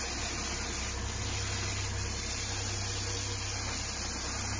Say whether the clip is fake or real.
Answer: real